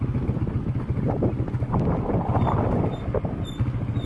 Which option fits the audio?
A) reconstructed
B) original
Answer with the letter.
B